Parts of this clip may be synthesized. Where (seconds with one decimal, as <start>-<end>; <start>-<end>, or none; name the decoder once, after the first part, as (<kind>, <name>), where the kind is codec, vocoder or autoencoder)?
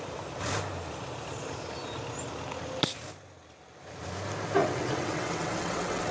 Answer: 4.6-6.1 (vocoder, WaveNeXt)